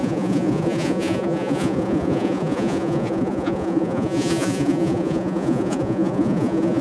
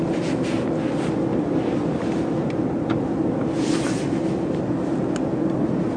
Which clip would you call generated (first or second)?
first